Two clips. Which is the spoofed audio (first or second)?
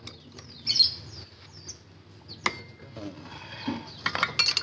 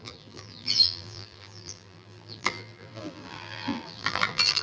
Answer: second